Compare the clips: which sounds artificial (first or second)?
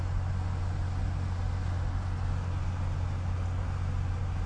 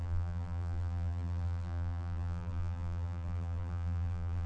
second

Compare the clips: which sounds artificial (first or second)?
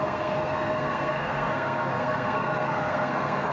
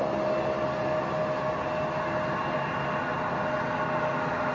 first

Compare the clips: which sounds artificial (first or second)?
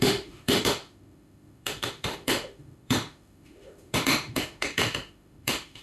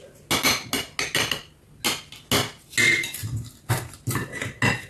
first